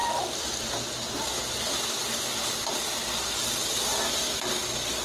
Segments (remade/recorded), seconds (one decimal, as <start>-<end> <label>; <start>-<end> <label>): 0.0-3.9 recorded; 3.9-4.5 remade; 4.5-5.0 recorded